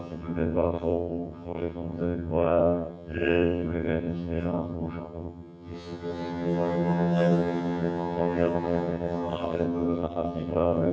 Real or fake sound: fake